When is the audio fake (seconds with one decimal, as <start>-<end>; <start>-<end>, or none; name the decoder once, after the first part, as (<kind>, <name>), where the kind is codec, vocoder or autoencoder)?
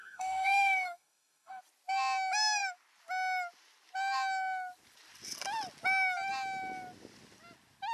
0.0-1.6 (codec, DAC)